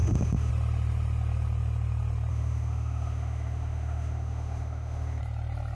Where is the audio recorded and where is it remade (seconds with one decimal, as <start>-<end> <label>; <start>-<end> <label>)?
0.0-0.5 remade; 0.5-2.3 recorded; 2.3-5.2 remade; 5.2-5.7 recorded